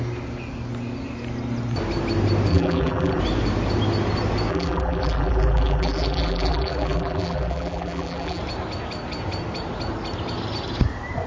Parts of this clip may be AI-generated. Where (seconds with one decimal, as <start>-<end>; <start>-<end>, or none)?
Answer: 2.5-3.2; 4.5-8.4